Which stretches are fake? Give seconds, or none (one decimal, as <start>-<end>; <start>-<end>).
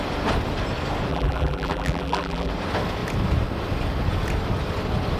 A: 1.1-2.5